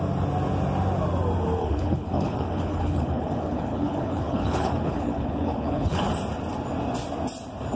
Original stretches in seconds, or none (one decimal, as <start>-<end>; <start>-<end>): 0.0-1.6; 6.0-7.8